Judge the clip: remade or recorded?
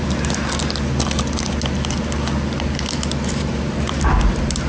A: recorded